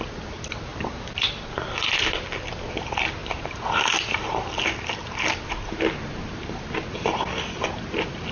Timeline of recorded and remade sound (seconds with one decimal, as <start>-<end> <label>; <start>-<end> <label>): 0.0-0.7 recorded; 0.7-1.3 remade; 1.3-3.2 recorded; 3.2-4.5 remade; 4.5-8.3 recorded